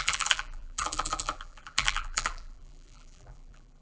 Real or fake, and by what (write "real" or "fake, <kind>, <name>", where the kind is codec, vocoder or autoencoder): fake, vocoder, BigVGAN v2